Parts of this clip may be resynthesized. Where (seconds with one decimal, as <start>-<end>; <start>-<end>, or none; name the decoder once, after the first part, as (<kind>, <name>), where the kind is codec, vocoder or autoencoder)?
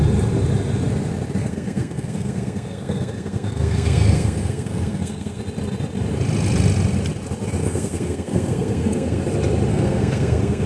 1.4-5.4 (codec, SNAC); 7.6-9.2; 9.7-10.7